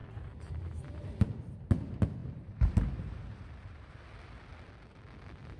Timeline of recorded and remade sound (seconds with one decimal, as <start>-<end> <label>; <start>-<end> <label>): 0.0-1.2 remade; 1.2-2.2 recorded; 2.2-3.9 remade; 3.9-5.6 recorded